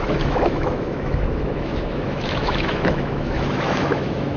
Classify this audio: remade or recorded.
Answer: remade